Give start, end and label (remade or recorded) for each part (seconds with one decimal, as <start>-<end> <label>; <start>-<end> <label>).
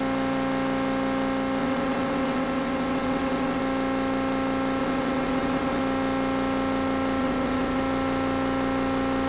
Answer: 0.0-1.6 recorded; 1.6-3.6 remade; 3.6-4.8 recorded; 4.8-5.8 remade; 5.8-7.2 recorded; 7.2-7.8 remade; 7.8-9.3 recorded